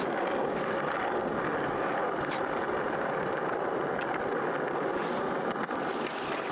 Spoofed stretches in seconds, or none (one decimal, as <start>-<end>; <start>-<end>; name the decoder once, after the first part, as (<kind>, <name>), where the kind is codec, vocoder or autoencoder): 1.5-3.5 (vocoder, BigVGAN v2)